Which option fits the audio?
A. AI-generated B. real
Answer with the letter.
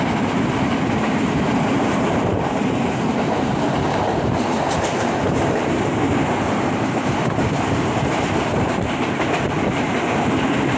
A